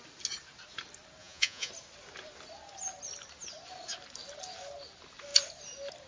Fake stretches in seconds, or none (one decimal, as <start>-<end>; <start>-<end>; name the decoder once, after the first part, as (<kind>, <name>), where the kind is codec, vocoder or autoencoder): 1.2-1.7 (vocoder, Vocos)